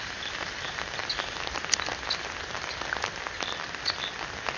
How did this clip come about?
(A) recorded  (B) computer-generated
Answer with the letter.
A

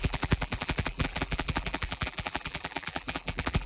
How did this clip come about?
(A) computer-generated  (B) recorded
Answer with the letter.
A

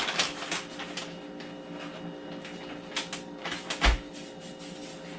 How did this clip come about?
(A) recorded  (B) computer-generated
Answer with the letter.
A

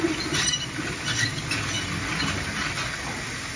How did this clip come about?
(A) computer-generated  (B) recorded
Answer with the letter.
B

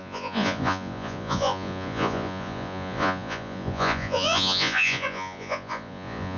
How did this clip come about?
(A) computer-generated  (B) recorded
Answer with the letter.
A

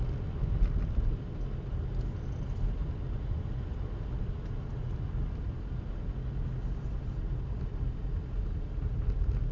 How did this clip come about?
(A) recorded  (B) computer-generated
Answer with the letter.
A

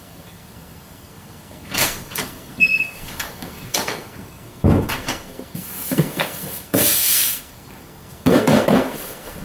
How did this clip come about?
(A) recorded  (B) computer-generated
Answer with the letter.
B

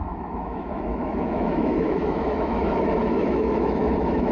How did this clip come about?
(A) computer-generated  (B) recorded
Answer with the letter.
A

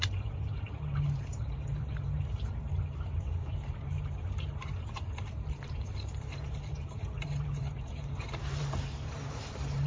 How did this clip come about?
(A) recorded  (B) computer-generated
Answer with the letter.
B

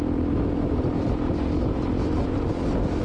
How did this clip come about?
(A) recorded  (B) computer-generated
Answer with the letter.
B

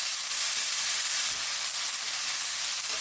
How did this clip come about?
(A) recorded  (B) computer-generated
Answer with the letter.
A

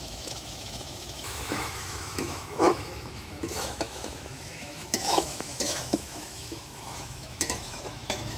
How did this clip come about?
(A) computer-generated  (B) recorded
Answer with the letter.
A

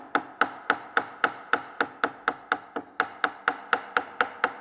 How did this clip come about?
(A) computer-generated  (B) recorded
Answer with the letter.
B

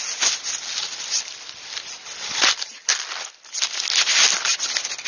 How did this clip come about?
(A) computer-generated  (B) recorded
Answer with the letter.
B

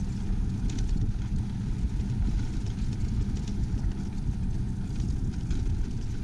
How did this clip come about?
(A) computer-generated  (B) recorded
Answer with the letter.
B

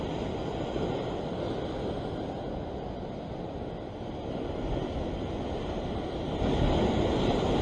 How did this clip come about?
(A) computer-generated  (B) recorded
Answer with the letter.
B